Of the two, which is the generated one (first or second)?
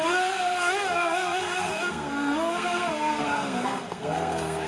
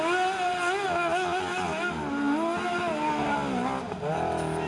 first